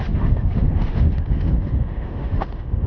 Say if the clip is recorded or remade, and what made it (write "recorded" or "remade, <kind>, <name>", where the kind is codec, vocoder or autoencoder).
remade, autoencoder, DAC-VAE